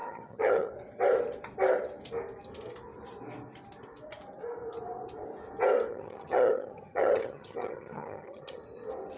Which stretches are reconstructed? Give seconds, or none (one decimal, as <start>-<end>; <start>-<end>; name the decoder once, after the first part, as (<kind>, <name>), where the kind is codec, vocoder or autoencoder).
0.0-0.7 (vocoder, HiFi-GAN); 5.9-8.6